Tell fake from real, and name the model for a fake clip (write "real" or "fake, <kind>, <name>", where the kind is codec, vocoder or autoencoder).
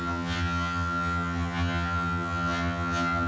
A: fake, vocoder, HiFi-GAN